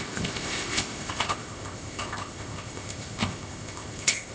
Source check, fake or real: fake